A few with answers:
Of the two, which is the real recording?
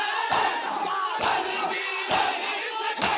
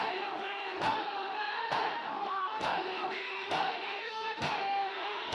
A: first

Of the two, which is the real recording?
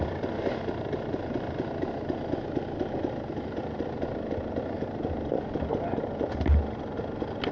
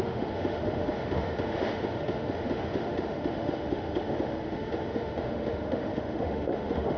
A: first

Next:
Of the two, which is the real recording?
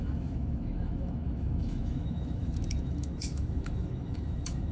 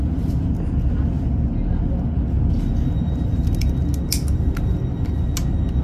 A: second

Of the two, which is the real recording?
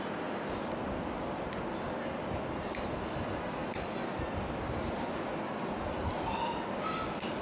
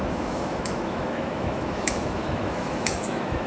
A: first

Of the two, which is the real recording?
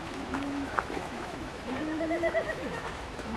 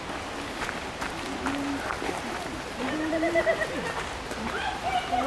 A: second